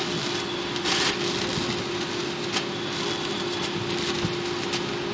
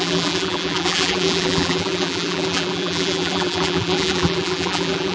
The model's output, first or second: second